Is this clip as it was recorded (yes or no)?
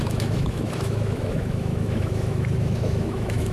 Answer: no